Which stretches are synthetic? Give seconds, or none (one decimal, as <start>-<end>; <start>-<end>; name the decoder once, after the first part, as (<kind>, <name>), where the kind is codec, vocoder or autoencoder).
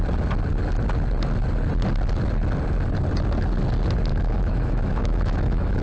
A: 4.1-5.8 (autoencoder, DAC-VAE)